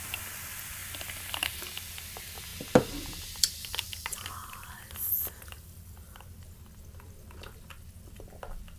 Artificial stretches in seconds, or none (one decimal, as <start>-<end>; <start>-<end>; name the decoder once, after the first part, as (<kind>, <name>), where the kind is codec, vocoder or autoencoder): none